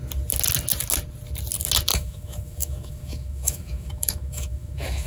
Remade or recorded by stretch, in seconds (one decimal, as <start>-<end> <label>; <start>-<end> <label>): 0.0-1.9 recorded; 1.9-5.1 remade